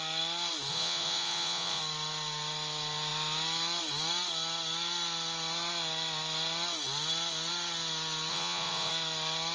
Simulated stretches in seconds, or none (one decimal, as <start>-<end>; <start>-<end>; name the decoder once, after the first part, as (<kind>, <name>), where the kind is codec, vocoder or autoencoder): 0.7-1.8 (vocoder, Vocos); 8.3-8.9

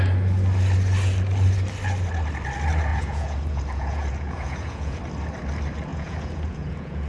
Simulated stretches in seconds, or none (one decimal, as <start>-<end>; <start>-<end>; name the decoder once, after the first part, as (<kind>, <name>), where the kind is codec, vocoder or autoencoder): 2.9-5.0 (vocoder, Vocos); 5.9-7.1

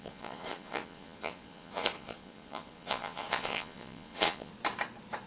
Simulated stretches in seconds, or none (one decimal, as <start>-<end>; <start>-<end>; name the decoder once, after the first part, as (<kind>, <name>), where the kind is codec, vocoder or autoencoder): 0.0-4.5 (vocoder, Vocos)

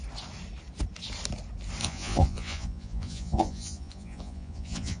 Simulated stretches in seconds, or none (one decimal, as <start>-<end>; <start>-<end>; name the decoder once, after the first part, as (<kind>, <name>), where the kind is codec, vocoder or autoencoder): 1.8-5.0 (vocoder, Vocos)